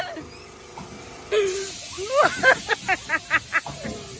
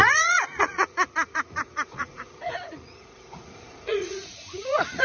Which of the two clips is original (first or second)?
first